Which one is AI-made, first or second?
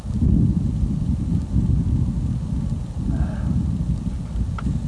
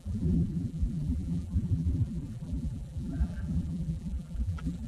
second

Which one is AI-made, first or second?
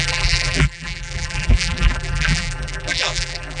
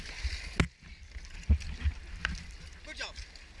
first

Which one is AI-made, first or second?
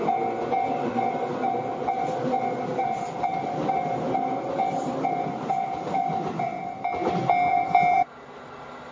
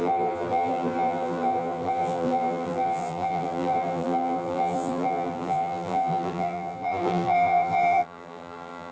second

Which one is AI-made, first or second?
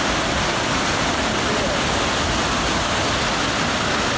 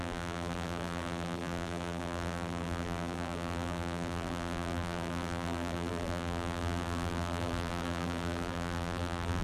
second